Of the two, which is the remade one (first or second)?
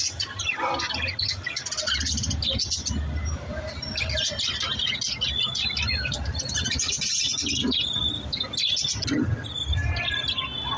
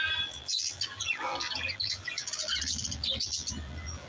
second